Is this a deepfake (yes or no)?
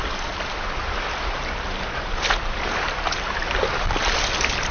no